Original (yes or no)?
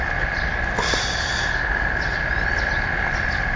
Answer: yes